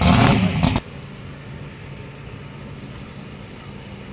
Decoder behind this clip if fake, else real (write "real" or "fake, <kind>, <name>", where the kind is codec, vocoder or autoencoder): real